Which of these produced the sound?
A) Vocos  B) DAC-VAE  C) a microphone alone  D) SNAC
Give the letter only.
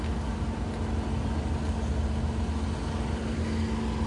C